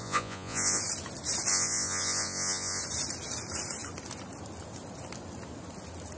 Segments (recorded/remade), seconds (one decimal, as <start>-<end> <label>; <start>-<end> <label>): 0.0-0.8 remade; 0.8-1.5 recorded; 1.5-2.8 remade; 2.8-6.2 recorded